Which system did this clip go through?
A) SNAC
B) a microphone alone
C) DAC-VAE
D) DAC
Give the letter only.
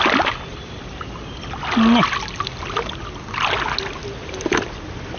B